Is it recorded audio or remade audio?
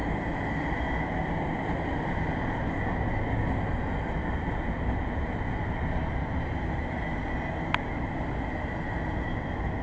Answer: recorded